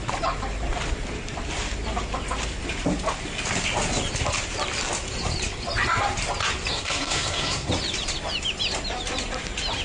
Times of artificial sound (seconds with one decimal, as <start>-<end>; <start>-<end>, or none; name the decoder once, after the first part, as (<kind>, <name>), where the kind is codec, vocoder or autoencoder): 6.7-7.7 (codec, SNAC)